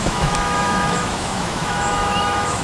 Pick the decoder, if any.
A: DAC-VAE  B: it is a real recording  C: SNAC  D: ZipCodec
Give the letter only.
A